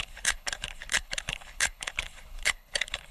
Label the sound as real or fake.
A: fake